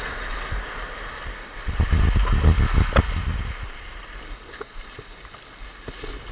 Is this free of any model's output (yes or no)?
yes